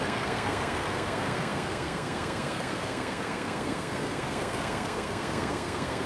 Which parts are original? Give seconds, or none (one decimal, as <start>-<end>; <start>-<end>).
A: none